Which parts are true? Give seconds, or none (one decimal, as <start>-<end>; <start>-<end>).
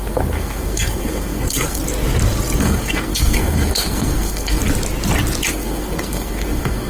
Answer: 1.8-2.6; 4.6-5.5